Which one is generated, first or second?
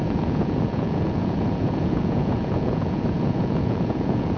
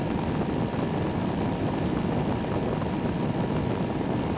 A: first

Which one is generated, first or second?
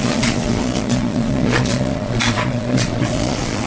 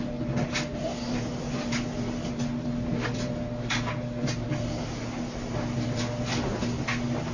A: first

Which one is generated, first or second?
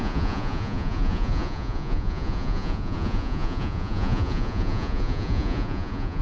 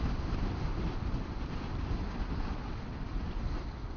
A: first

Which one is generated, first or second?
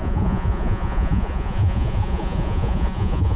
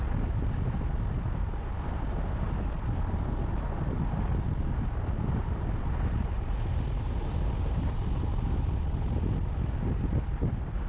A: first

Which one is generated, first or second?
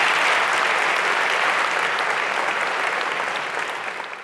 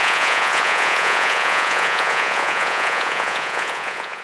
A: second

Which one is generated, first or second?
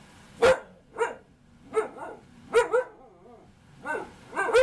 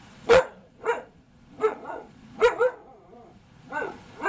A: second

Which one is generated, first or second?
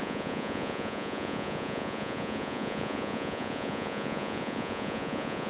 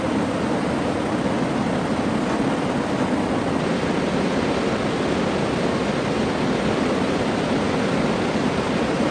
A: first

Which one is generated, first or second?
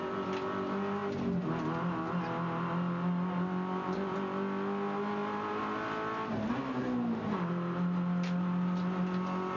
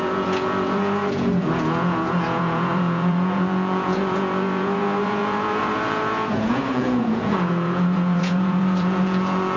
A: second